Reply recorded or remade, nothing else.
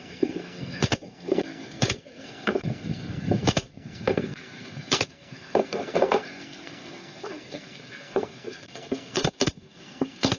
remade